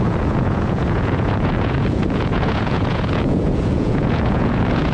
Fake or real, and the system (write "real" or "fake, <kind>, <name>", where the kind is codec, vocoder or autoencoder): fake, vocoder, Vocos